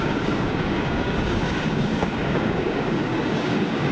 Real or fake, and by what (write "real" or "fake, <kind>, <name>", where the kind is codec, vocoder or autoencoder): fake, codec, DAC